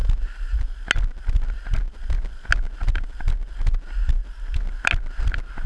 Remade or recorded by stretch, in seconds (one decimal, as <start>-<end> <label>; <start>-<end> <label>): 0.0-5.7 recorded